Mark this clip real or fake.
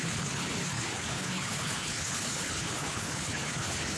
fake